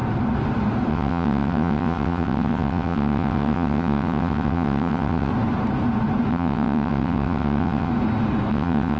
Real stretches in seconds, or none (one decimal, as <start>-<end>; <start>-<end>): 0.0-0.9; 5.3-6.3; 7.9-8.5

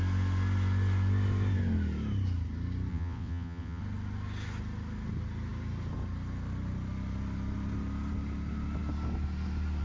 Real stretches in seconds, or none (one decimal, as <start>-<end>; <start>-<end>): 0.0-2.9; 3.8-9.8

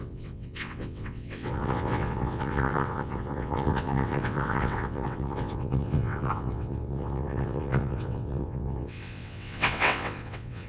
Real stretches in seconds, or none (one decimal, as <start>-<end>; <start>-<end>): none

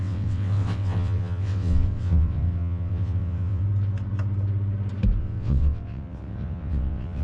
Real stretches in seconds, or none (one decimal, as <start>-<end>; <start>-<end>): 3.6-5.2

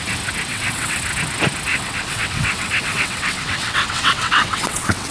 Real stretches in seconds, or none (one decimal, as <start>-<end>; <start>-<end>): 0.0-0.5; 1.0-1.7

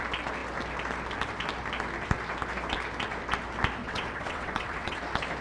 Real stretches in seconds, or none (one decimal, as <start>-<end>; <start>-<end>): 0.0-3.8; 5.0-5.4